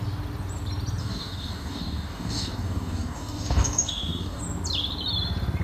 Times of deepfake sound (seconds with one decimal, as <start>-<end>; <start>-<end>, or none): 1.0-4.4